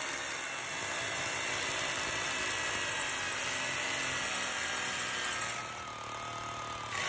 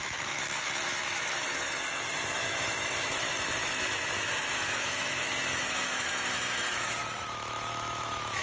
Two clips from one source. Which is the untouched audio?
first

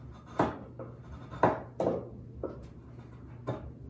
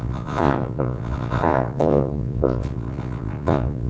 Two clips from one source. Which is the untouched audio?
first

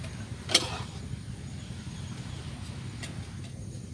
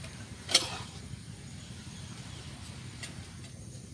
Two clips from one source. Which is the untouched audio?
first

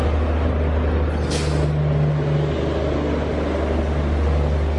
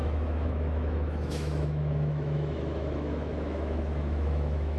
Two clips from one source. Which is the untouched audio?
first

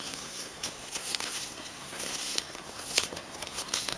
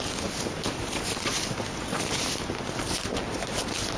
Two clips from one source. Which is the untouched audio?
second